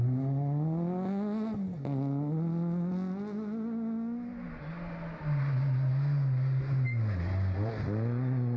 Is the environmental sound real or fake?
real